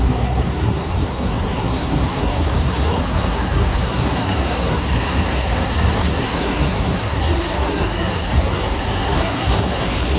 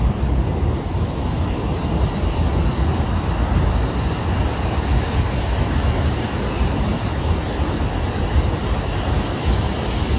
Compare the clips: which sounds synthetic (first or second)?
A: first